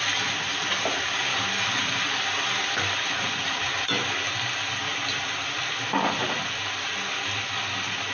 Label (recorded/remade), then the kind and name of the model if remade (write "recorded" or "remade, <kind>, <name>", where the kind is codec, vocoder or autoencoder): recorded